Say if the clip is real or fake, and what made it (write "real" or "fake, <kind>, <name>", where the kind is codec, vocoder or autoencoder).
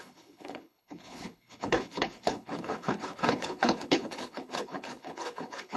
fake, codec, HILCodec